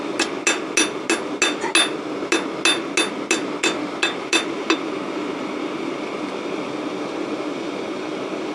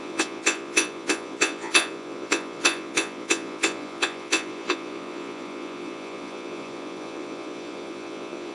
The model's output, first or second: second